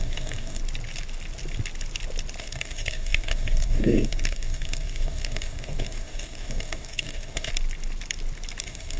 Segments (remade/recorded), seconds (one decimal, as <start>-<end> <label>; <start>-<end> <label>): 0.0-0.6 remade; 0.6-2.4 recorded; 2.4-7.5 remade; 7.5-8.6 recorded; 8.6-9.0 remade